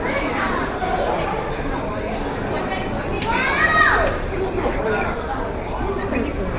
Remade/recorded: recorded